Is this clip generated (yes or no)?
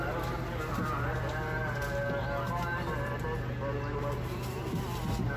no